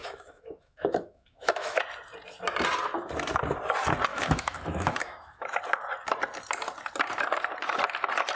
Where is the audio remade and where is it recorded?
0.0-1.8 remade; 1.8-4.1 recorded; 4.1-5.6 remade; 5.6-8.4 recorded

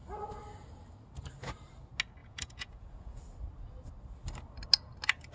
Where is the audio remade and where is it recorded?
0.0-2.2 recorded; 2.2-3.2 remade; 3.2-5.3 recorded

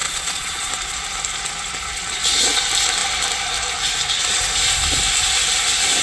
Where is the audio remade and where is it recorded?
0.0-0.7 remade; 0.7-6.0 recorded

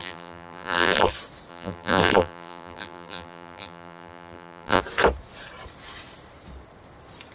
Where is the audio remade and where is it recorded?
0.0-1.1 remade; 1.1-1.5 recorded; 1.5-4.8 remade; 4.8-7.3 recorded

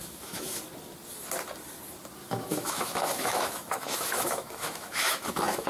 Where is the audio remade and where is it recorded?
0.0-0.6 remade; 0.6-2.2 recorded; 2.2-5.7 remade